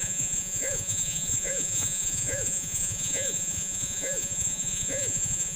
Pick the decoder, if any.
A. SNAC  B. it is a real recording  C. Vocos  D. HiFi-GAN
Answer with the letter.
C